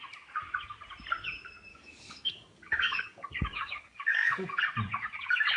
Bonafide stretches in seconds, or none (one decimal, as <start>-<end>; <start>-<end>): 0.0-1.7; 4.6-5.6